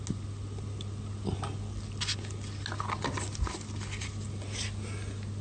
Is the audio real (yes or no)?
yes